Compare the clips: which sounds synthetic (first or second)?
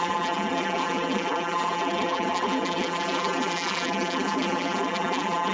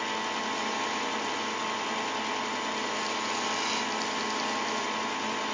first